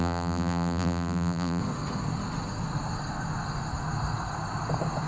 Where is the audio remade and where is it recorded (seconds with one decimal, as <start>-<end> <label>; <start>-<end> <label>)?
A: 0.0-1.6 remade; 1.6-5.1 recorded